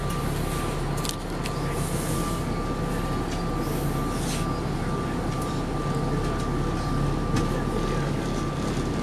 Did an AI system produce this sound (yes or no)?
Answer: no